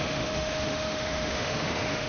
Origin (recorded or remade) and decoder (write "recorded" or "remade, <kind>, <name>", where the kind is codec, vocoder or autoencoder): remade, autoencoder, DAC-VAE